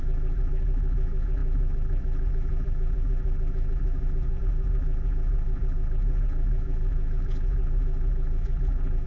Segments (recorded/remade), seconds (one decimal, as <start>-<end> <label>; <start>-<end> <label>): 0.0-9.1 remade